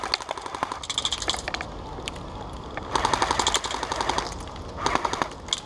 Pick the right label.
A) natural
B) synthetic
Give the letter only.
A